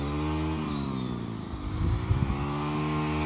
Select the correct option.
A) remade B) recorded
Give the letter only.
B